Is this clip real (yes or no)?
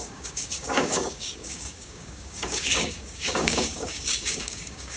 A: no